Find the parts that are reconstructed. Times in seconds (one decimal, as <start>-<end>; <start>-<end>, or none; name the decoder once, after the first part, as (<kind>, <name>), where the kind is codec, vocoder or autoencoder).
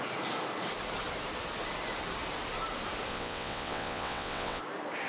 3.1-4.6 (vocoder, WaveNeXt)